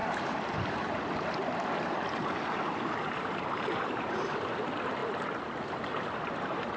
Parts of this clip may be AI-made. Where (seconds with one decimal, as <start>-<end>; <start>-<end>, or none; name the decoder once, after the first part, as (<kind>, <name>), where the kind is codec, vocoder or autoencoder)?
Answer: 0.0-6.8 (vocoder, BigVGAN v2)